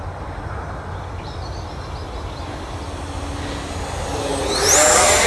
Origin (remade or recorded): recorded